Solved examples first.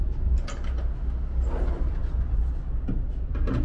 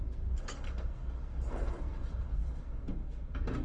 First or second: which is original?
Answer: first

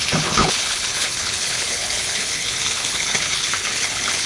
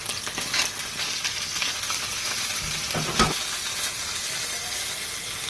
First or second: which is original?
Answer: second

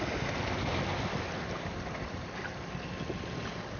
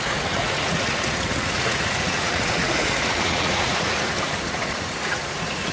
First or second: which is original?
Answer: first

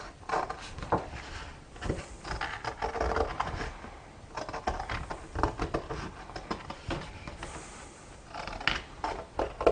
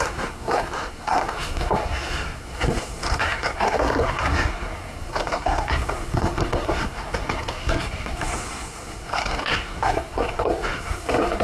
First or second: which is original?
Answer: first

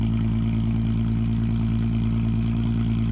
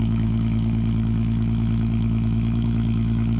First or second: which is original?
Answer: first